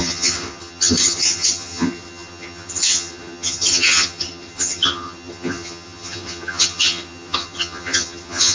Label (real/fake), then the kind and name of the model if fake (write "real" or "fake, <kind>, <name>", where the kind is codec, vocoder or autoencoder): fake, vocoder, HiFi-GAN